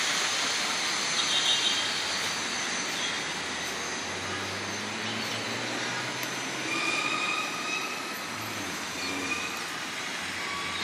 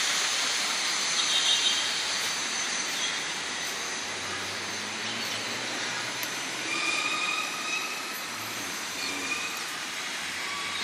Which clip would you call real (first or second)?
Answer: first